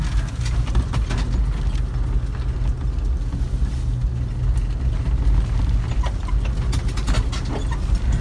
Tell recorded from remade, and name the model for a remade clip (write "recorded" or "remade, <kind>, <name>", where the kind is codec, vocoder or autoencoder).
recorded